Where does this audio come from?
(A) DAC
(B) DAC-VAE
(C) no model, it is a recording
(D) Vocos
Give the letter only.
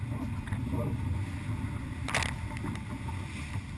C